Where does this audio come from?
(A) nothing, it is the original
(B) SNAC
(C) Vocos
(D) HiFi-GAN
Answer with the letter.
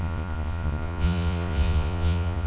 C